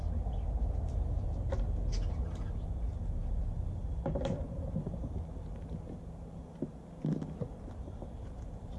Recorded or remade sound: recorded